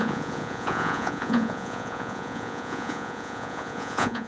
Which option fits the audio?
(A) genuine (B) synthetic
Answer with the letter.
B